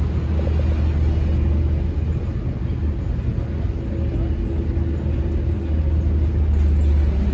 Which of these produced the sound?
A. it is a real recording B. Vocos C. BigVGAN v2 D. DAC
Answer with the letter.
A